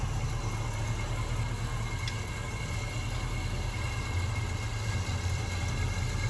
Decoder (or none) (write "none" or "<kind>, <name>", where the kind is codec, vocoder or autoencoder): none